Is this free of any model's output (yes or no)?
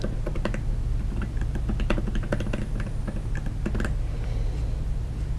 yes